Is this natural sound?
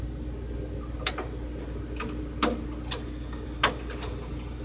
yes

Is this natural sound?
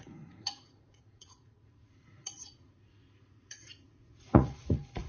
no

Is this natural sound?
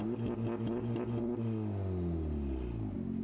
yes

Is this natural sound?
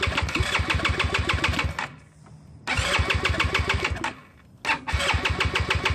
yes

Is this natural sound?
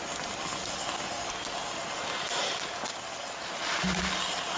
yes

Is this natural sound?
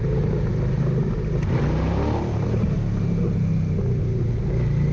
yes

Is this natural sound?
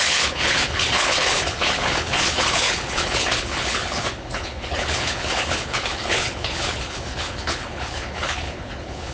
no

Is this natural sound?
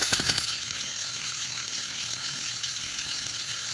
no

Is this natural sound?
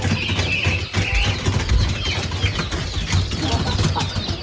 yes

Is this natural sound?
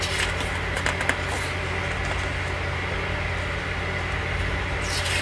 yes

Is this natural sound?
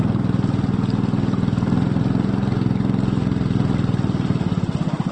yes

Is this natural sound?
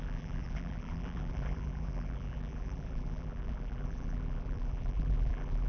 no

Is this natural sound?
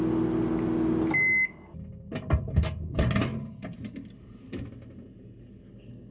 yes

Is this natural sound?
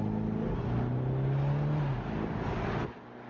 yes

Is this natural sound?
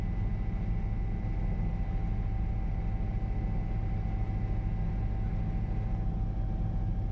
yes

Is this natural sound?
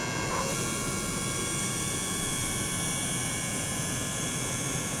no